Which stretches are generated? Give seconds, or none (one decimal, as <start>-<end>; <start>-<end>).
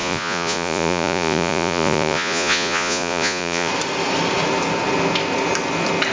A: 0.0-3.7